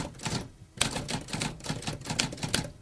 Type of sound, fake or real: real